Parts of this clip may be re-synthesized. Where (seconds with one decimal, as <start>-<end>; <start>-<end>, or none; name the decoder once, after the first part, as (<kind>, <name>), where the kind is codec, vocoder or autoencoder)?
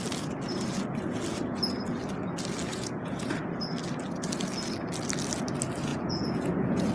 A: 2.7-3.4 (vocoder, Vocos); 5.9-6.9